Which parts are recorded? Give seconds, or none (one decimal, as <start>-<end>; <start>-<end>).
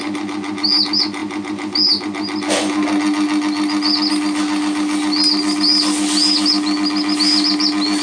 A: 0.0-8.0